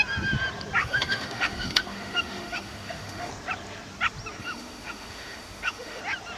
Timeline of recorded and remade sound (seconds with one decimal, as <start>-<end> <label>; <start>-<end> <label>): 0.0-0.8 recorded; 0.8-3.3 remade; 3.3-4.4 recorded; 4.4-6.0 remade; 6.0-6.4 recorded